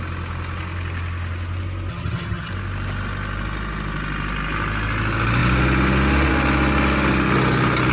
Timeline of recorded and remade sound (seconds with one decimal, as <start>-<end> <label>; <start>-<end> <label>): 0.0-1.9 recorded; 1.9-2.5 remade; 2.5-7.9 recorded